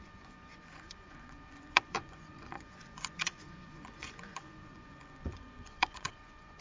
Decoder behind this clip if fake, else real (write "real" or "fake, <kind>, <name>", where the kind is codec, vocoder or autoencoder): fake, vocoder, Vocos